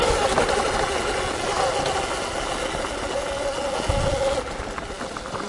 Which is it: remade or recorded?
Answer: recorded